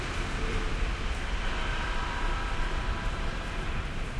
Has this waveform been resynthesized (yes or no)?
yes